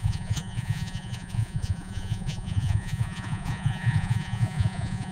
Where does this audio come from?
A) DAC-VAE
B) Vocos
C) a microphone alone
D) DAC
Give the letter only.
B